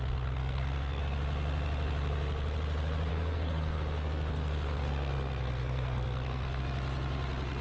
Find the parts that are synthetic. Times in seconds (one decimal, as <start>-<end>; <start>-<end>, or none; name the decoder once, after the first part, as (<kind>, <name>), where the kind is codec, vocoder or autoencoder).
0.4-1.0 (codec, SNAC); 3.1-6.6